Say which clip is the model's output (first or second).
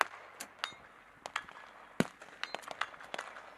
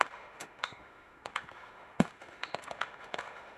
second